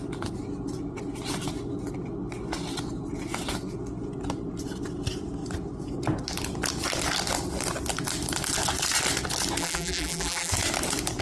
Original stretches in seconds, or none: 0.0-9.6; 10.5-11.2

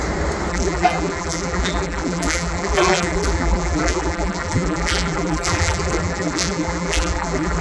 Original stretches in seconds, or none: 0.0-0.5

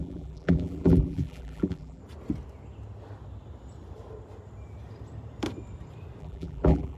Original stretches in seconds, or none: 2.0-6.2

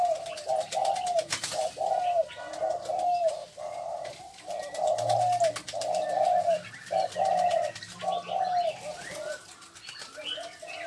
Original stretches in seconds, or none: 0.0-10.9

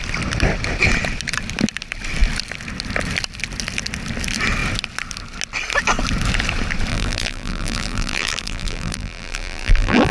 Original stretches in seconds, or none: 0.0-6.9

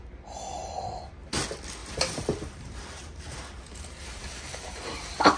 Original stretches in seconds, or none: 0.0-0.6; 1.2-1.8; 5.0-5.4

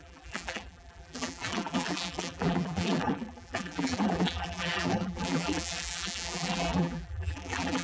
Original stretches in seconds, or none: none

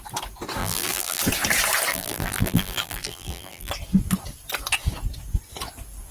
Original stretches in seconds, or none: 0.0-0.6; 1.2-1.9; 3.7-6.1